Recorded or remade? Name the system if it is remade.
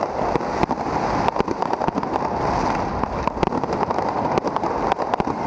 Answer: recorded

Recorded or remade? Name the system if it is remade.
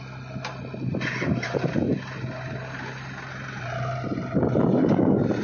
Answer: recorded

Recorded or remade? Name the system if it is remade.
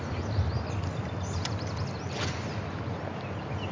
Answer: recorded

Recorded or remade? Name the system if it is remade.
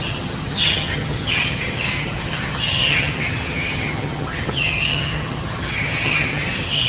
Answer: remade, vocoder, HiFi-GAN